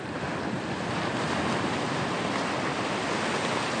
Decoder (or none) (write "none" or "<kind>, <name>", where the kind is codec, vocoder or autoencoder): none